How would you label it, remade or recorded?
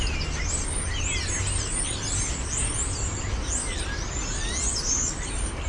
recorded